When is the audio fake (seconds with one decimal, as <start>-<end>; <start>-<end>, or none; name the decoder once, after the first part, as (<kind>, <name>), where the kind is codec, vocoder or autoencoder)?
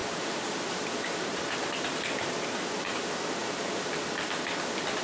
0.0-3.0 (vocoder, BigVGAN v2); 3.4-3.9